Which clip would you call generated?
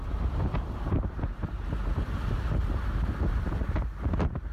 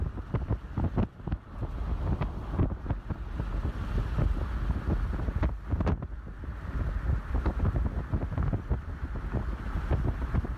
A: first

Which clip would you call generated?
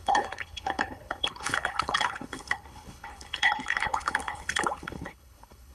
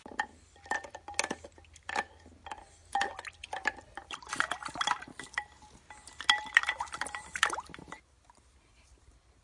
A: first